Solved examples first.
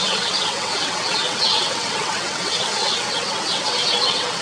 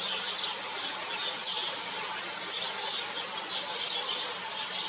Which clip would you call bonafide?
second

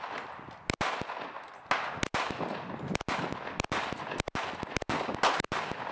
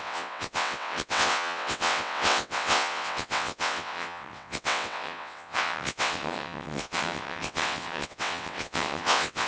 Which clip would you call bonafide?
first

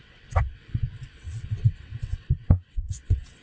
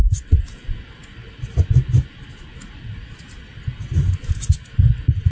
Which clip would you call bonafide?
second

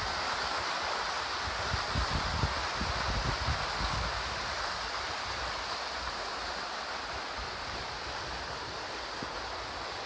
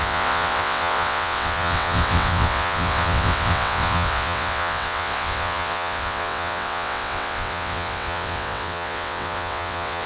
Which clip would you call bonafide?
first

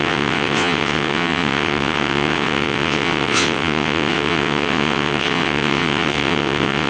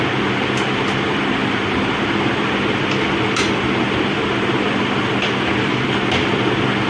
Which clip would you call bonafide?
second